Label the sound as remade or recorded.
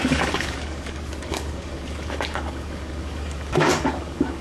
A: remade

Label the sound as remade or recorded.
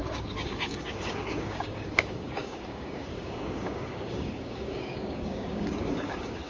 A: remade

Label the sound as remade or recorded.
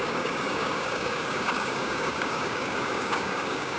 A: remade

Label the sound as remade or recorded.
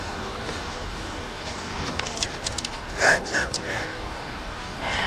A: remade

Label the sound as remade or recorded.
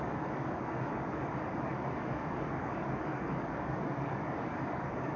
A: remade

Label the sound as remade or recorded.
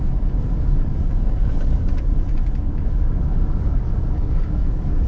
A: remade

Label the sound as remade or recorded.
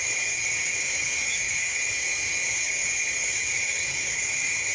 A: remade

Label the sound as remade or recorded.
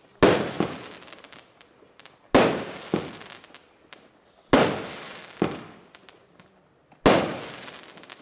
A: recorded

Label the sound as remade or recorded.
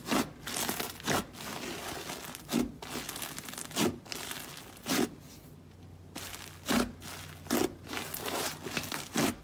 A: recorded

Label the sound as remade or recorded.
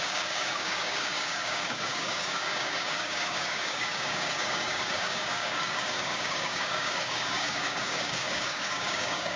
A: remade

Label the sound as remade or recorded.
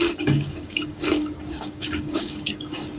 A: remade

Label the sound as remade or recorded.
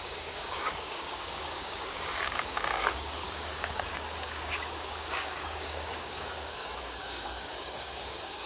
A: remade